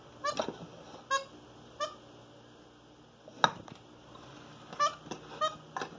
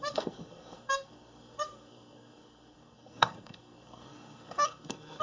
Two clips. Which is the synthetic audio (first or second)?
second